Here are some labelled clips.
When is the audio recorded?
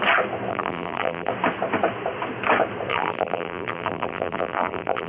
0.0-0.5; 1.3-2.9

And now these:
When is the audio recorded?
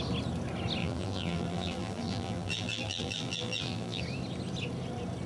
0.0-0.8; 4.0-5.3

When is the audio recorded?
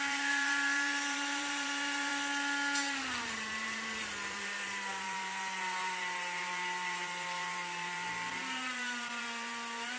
2.1-3.2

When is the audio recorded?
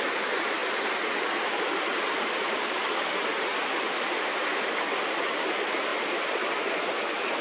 0.0-0.6; 5.0-5.9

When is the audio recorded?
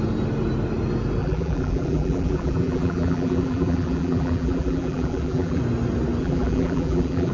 0.0-1.2; 5.6-6.2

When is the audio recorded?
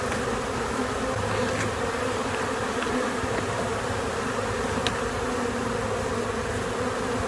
0.0-0.8; 4.1-7.3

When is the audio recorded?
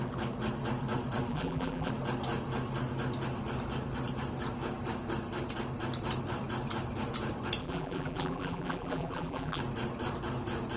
0.0-1.3; 1.9-7.6; 9.6-10.8